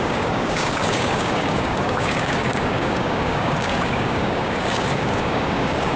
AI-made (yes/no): yes